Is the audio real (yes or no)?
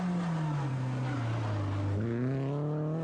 yes